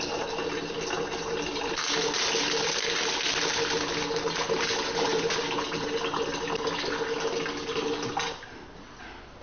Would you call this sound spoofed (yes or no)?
no